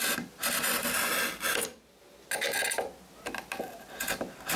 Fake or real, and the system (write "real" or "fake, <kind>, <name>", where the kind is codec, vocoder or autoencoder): real